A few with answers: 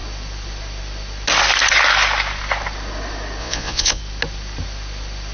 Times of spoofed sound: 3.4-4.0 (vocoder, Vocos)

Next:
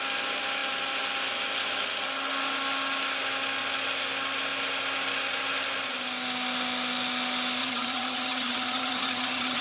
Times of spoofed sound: 7.6-9.6 (vocoder, HiFi-GAN)

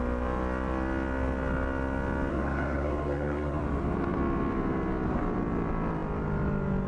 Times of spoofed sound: 2.3-3.6 (codec, SNAC)

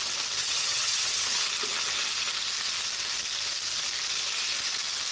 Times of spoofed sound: 0.4-1.1 (vocoder, HiFi-GAN)

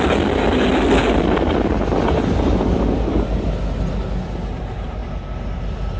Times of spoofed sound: none